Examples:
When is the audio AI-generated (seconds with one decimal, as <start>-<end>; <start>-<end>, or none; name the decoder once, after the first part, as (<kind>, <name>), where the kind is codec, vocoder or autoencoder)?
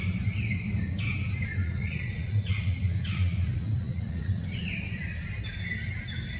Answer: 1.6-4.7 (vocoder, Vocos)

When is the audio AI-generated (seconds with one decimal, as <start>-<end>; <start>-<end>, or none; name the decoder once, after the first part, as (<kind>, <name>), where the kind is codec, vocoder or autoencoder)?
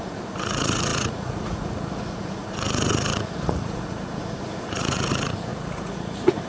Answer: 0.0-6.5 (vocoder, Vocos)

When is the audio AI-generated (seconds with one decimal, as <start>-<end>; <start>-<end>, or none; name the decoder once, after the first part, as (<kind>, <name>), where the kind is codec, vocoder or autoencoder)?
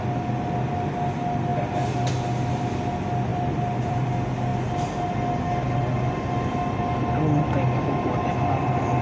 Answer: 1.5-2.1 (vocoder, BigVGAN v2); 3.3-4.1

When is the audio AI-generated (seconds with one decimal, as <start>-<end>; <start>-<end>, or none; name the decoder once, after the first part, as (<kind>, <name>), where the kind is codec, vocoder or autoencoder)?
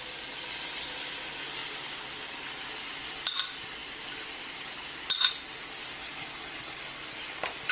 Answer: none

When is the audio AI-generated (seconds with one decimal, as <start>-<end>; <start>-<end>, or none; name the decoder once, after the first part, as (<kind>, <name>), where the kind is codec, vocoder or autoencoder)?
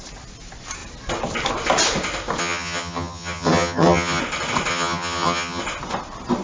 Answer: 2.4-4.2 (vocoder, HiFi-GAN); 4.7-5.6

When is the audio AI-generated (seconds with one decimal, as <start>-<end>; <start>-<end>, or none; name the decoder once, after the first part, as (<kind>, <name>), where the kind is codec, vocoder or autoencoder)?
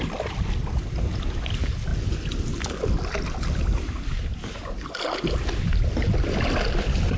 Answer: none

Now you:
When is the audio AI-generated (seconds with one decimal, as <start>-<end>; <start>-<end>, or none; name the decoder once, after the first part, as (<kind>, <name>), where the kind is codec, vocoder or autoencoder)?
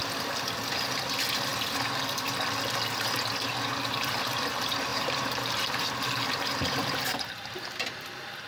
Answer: 4.9-7.9 (vocoder, BigVGAN v2)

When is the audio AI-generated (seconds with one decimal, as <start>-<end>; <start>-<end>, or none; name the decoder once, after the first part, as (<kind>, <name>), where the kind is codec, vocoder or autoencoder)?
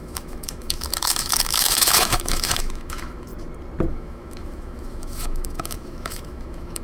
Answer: 0.0-3.3 (autoencoder, DAC-VAE); 3.9-6.8